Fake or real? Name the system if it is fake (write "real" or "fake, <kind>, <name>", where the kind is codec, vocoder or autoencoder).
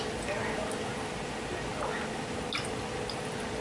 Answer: real